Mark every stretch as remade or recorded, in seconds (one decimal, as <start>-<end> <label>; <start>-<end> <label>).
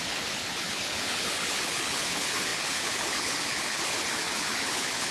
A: 0.0-5.1 remade